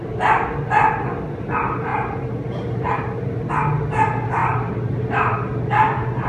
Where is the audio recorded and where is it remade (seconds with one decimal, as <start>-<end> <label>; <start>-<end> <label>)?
0.0-1.9 recorded; 1.9-3.5 remade; 3.5-4.4 recorded; 4.4-5.0 remade; 5.0-6.3 recorded